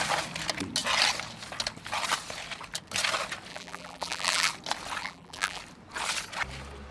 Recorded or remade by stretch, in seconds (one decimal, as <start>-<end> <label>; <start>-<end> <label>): 0.0-3.5 recorded; 3.5-4.5 remade; 4.5-5.0 recorded; 5.0-5.6 remade; 5.6-6.9 recorded